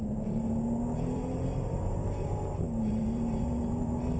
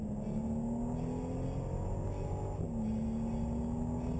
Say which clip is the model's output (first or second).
first